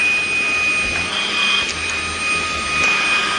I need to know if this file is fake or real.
real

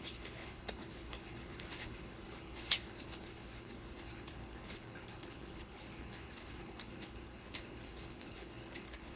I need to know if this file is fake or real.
fake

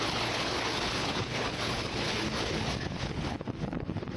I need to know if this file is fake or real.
fake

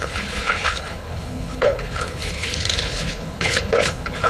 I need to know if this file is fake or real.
fake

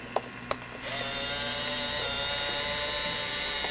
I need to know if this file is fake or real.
real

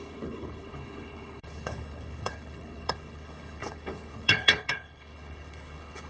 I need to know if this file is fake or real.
fake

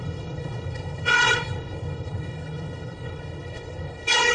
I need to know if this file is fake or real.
fake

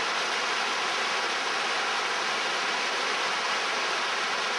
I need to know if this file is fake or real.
real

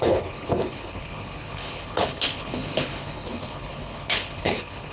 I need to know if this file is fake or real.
fake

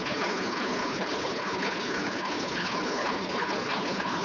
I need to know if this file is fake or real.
fake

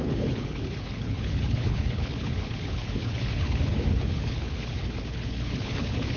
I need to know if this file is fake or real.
fake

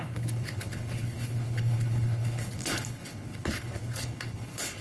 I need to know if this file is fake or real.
fake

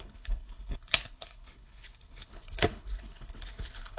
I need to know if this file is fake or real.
fake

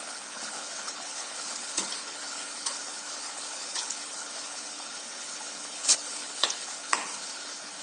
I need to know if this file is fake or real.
fake